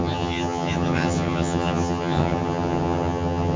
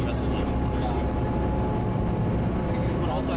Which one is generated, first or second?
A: first